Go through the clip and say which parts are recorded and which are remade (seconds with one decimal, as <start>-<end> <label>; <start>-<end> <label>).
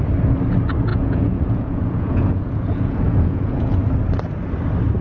0.0-0.9 recorded; 0.9-3.9 remade; 3.9-5.0 recorded